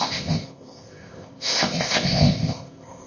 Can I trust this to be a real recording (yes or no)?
no